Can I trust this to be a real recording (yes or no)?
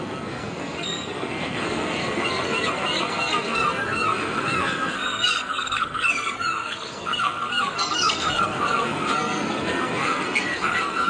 no